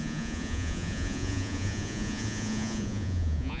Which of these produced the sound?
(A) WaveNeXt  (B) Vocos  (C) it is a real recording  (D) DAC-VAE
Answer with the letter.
B